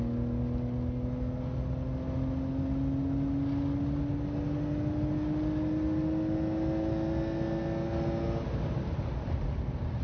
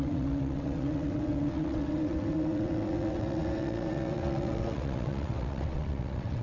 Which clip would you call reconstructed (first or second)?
second